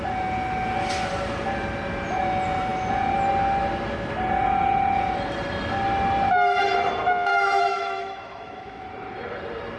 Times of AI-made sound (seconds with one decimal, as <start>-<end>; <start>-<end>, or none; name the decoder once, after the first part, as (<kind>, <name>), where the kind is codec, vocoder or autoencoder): 7.3-8.8 (autoencoder, DAC-VAE)